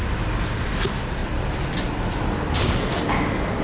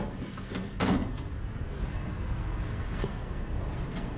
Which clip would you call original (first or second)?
first